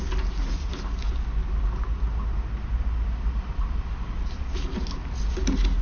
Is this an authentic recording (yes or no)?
yes